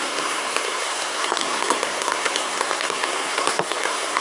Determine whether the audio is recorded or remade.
remade